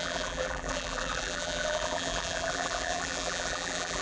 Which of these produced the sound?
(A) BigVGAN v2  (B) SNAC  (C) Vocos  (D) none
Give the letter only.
A